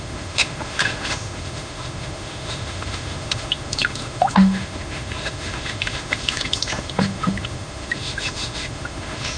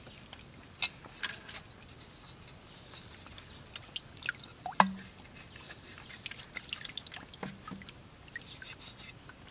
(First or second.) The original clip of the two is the second